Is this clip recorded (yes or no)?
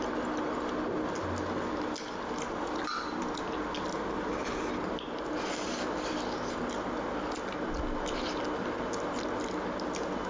yes